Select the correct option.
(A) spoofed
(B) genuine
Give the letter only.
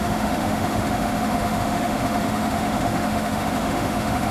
A